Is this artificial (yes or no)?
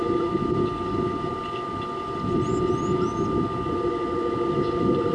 no